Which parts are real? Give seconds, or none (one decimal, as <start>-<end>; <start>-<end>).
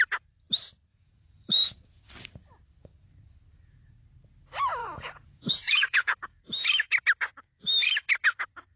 0.0-0.9; 2.0-4.8; 6.4-8.8